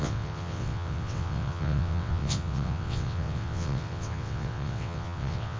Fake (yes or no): yes